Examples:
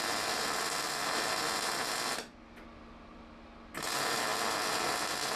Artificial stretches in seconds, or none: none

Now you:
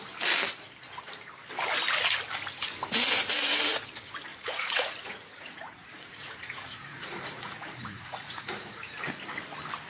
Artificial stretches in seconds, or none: 4.3-9.0 (vocoder, Vocos)

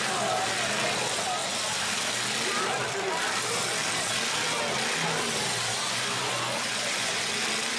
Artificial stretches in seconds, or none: 5.7-7.3 (vocoder, Vocos)

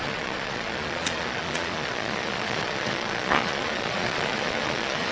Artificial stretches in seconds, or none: 0.0-5.1 (vocoder, Vocos)

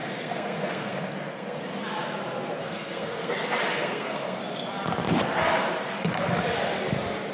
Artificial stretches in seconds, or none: 0.0-1.6 (codec, SNAC); 2.6-3.3; 3.7-4.4